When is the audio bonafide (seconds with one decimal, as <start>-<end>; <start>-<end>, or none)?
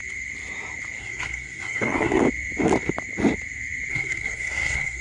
0.0-1.0; 2.2-3.9